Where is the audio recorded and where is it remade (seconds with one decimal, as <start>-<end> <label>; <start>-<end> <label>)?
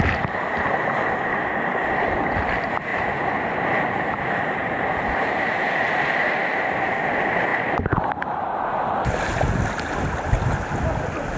0.0-2.9 recorded; 2.9-5.7 remade; 5.7-11.4 recorded